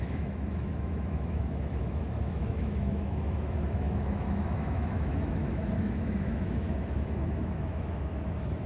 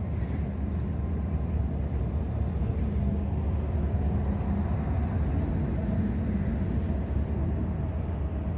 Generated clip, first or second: first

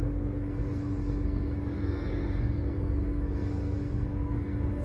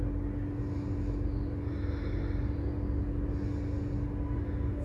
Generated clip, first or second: first